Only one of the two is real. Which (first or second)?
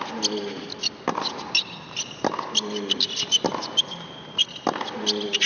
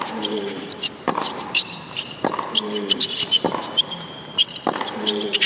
first